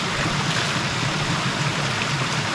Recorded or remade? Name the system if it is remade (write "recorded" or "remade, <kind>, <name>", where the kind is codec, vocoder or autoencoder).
recorded